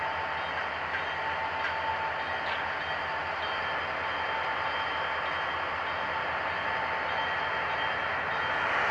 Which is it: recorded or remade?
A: recorded